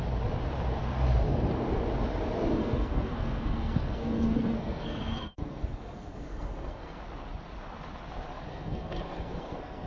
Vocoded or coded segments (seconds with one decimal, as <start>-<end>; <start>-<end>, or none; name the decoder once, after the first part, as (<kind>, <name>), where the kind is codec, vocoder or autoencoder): 2.6-7.0 (codec, SNAC); 8.5-9.9